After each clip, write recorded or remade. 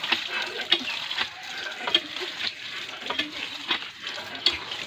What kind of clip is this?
recorded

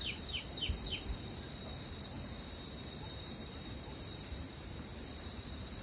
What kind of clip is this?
remade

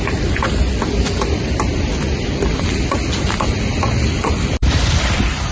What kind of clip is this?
remade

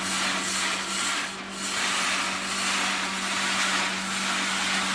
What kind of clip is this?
recorded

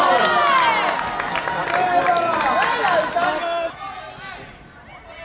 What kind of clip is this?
recorded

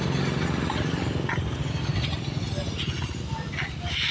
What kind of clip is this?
recorded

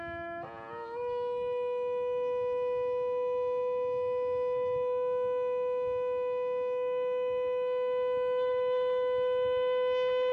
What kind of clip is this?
recorded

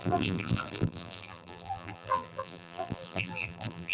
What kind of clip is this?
remade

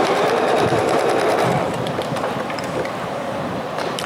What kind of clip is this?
remade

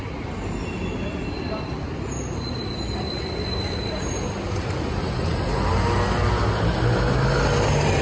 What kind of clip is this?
recorded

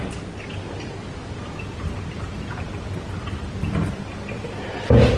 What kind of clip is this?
recorded